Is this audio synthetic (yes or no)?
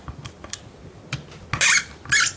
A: no